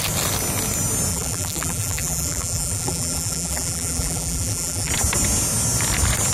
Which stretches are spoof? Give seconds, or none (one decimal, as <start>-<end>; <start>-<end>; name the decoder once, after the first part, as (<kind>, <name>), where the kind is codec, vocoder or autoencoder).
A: 1.1-4.9 (vocoder, BigVGAN v2)